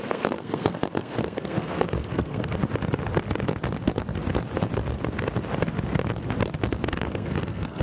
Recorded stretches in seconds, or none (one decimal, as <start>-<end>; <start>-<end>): 2.6-6.9